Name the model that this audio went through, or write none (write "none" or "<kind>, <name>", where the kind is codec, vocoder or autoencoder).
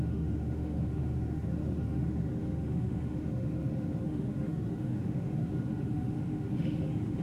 autoencoder, DAC-VAE